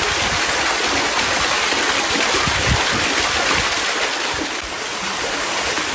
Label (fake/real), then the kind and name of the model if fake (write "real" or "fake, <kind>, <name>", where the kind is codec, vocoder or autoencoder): real